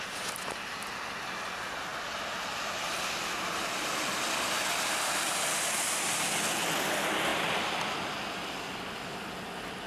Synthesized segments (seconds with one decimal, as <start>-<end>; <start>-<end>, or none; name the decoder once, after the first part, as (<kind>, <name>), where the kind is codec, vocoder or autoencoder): none